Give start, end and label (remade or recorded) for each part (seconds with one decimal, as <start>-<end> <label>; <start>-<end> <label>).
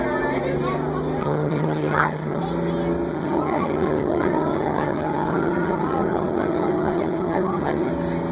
0.0-1.2 recorded; 1.2-2.4 remade; 2.4-3.1 recorded; 3.1-7.9 remade; 7.9-8.3 recorded